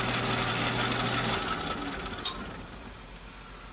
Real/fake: real